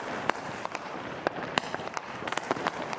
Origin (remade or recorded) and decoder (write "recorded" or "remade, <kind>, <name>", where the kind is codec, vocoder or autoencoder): remade, vocoder, BigVGAN v2